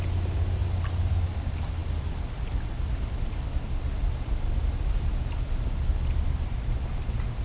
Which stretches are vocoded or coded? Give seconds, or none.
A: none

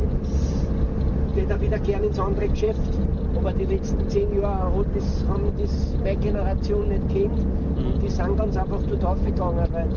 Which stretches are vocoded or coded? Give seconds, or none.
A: none

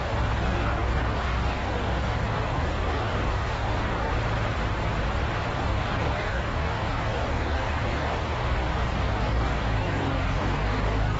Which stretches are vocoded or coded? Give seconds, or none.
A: 0.0-4.1; 5.6-11.2

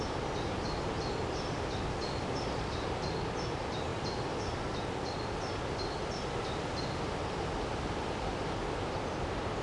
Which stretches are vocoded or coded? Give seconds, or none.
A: none

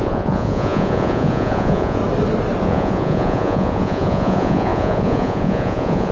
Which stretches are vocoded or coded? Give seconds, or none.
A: 0.0-2.0; 2.6-6.1